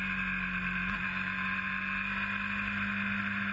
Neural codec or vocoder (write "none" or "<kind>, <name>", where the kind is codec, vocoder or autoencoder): none